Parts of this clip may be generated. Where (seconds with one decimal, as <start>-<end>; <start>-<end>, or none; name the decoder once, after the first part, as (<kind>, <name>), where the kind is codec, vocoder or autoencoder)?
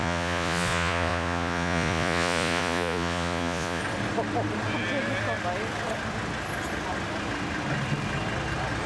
0.0-3.8 (vocoder, Vocos)